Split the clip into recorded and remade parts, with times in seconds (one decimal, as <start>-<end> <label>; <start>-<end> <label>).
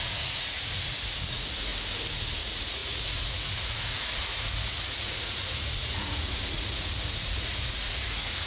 0.0-1.7 remade; 1.7-2.4 recorded; 2.4-8.5 remade